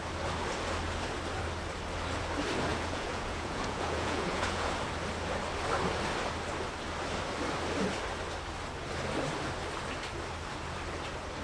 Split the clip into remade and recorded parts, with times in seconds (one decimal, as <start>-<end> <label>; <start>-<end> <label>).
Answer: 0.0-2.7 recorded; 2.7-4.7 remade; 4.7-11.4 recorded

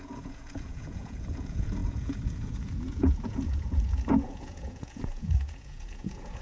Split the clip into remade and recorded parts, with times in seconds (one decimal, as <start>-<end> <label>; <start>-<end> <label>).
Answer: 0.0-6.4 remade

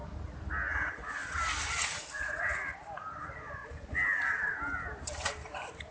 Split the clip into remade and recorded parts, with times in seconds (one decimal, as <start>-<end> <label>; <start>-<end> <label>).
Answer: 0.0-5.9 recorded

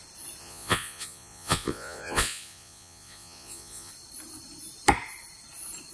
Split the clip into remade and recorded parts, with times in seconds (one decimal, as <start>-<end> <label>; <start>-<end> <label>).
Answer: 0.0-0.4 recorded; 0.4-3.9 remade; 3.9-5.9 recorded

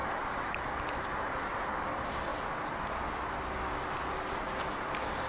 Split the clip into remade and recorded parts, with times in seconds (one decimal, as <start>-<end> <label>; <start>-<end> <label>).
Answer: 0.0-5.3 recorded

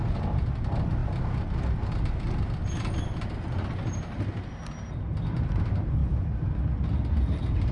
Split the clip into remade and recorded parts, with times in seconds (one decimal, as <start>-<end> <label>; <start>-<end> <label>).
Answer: 0.0-7.7 recorded

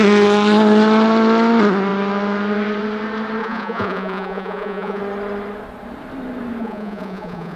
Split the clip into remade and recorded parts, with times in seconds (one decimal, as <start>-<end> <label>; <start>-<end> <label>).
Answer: 0.0-3.4 recorded; 3.4-5.0 remade; 5.0-6.6 recorded; 6.6-7.6 remade